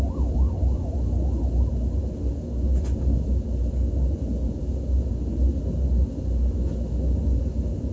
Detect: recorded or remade recorded